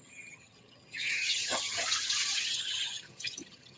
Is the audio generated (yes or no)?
yes